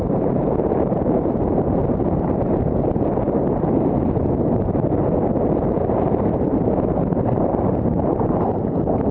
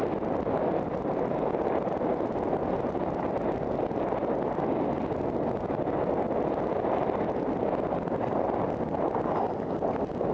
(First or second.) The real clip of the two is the second